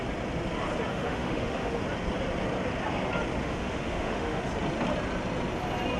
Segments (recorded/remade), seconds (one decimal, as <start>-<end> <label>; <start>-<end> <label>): 0.0-0.9 recorded; 0.9-1.8 remade; 1.8-3.4 recorded; 3.4-4.4 remade; 4.4-6.0 recorded